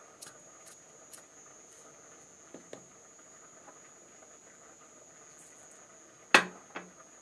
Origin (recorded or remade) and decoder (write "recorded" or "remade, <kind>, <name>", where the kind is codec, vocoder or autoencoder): recorded